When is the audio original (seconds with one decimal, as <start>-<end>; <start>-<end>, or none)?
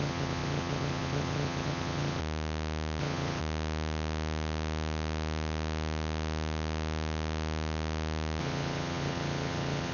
2.2-3.0; 3.4-8.4